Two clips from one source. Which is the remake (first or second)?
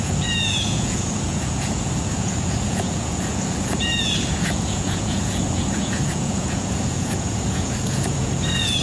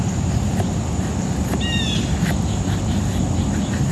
first